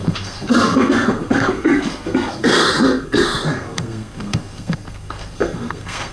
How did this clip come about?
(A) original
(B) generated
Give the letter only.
B